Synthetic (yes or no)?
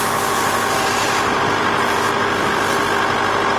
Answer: no